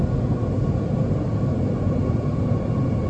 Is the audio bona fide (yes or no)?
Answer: yes